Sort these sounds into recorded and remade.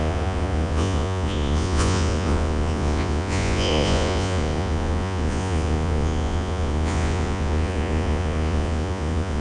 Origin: remade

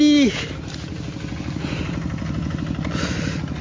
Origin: recorded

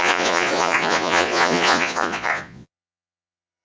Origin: remade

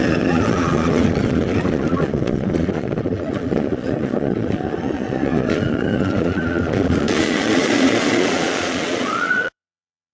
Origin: remade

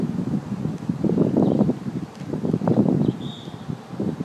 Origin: recorded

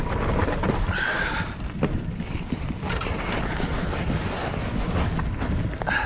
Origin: recorded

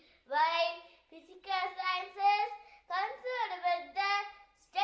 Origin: recorded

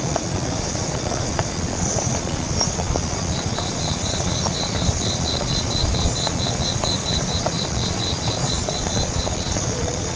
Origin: remade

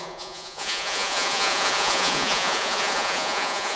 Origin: remade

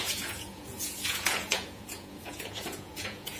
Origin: remade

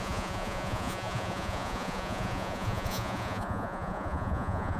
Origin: remade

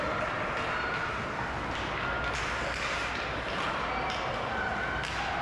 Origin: recorded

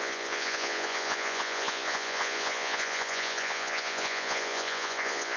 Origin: remade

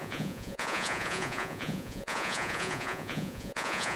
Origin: remade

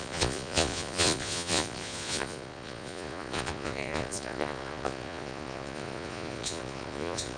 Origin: remade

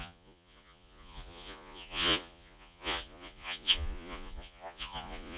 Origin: remade